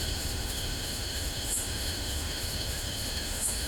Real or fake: fake